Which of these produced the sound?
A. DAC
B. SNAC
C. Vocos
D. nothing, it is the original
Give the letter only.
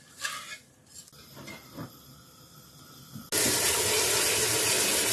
D